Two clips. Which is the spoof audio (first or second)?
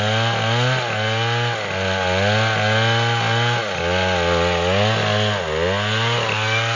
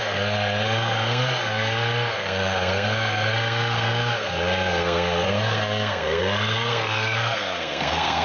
second